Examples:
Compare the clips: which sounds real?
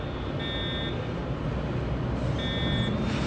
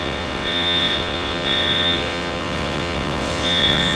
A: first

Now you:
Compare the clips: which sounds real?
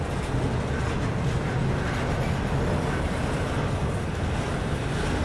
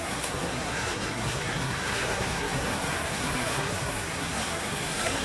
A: first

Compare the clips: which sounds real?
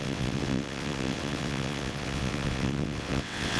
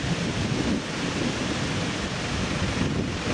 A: second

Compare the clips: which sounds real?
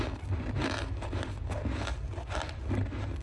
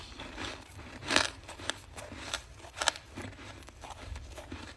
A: first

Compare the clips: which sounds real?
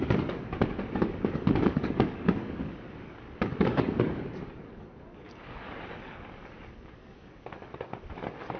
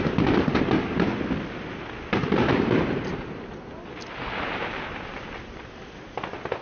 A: second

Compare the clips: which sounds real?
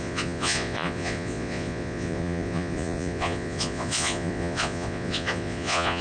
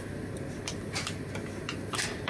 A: second